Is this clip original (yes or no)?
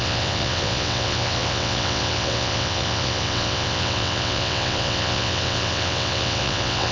no